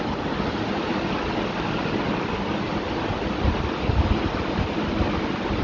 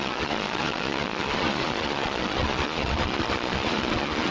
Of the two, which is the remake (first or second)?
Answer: second